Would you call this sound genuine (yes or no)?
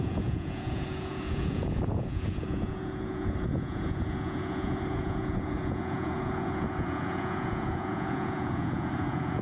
no